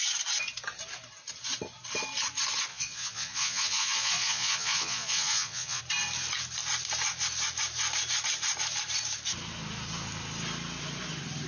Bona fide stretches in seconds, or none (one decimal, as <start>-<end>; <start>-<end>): 0.0-2.7; 5.8-11.5